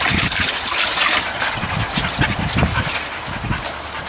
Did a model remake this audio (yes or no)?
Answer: no